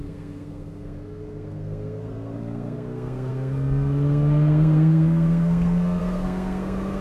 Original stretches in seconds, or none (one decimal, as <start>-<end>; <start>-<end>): none